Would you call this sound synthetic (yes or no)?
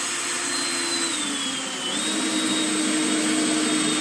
no